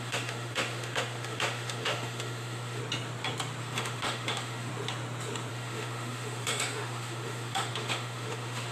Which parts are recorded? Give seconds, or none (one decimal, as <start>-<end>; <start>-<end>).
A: 2.8-3.6; 4.7-5.5